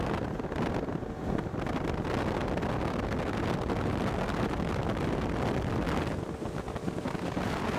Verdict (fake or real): real